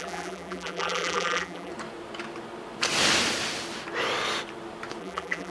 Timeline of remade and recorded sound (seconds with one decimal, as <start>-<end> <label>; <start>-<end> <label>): 0.0-1.7 remade; 1.7-5.0 recorded; 5.0-5.5 remade